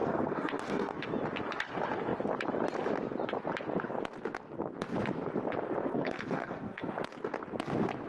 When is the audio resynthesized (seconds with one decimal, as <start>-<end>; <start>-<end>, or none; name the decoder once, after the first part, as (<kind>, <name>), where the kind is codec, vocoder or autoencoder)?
0.0-1.0 (codec, SNAC); 5.9-6.9